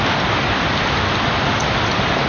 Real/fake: real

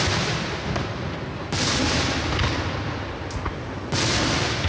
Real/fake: real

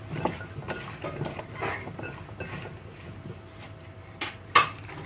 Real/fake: real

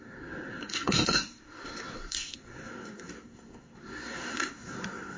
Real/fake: fake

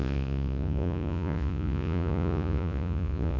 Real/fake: fake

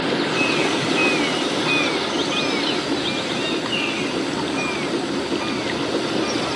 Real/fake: real